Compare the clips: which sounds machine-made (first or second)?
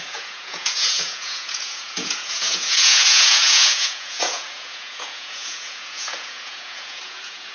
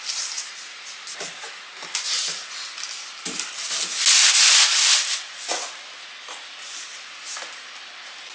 first